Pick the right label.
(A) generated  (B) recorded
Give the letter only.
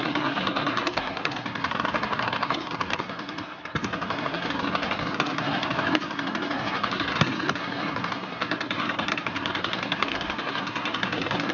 A